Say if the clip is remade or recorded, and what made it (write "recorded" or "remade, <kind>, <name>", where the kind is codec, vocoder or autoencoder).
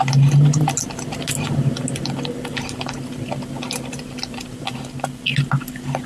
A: recorded